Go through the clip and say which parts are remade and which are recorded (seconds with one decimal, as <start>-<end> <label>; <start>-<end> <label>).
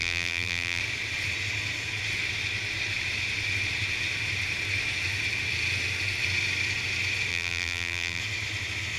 0.0-0.8 remade; 0.8-7.3 recorded; 7.3-8.2 remade; 8.2-9.0 recorded